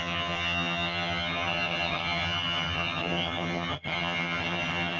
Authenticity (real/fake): fake